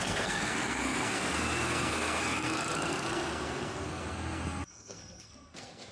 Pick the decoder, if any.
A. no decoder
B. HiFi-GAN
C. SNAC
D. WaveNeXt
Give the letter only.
C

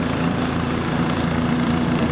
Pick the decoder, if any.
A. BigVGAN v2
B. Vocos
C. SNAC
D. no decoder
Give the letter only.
A